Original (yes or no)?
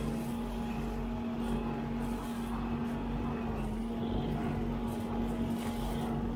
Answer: yes